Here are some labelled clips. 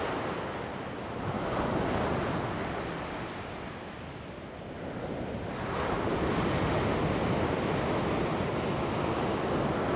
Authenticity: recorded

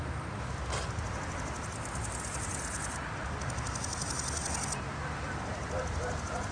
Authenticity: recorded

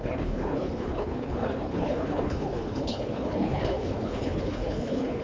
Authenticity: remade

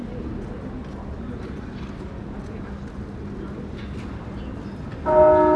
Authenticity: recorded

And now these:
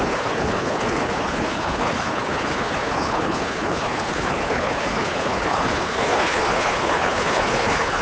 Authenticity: remade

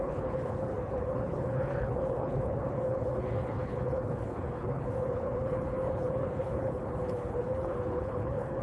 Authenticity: remade